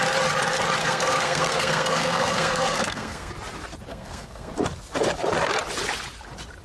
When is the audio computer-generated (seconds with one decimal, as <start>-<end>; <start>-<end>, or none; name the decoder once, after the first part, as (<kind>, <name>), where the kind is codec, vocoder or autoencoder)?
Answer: 0.8-3.3 (codec, SNAC); 3.9-4.5

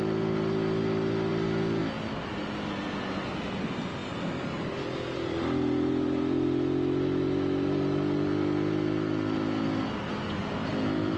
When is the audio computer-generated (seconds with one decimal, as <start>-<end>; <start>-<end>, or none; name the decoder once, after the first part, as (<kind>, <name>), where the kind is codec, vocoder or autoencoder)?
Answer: none

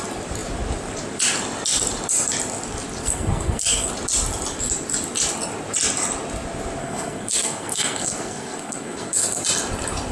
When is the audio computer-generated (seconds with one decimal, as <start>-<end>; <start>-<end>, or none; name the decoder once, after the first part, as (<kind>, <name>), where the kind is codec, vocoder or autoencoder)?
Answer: 3.0-3.9 (codec, SNAC); 6.8-9.4

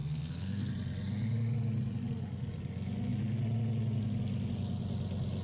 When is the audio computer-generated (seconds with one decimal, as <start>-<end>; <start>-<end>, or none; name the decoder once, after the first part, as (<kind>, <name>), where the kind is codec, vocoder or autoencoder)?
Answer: 0.0-0.7 (codec, SNAC)